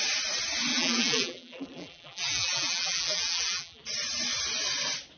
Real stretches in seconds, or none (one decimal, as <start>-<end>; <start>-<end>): 0.0-0.7; 3.8-5.2